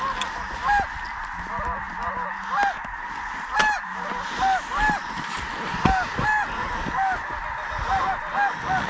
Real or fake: real